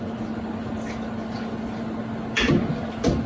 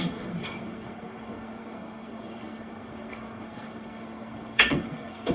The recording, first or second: first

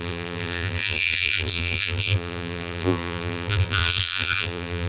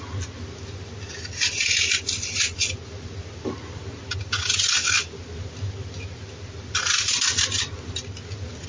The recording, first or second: second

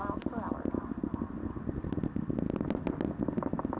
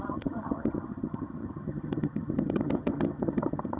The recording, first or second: first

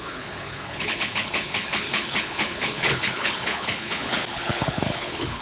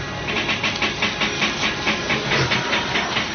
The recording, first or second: second